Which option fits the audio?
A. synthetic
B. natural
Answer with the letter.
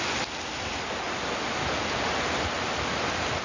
B